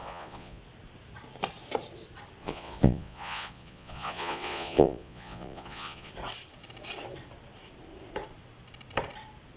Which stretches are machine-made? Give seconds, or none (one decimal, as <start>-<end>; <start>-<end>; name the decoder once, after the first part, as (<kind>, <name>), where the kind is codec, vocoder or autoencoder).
0.0-0.6 (vocoder, Vocos); 2.4-6.1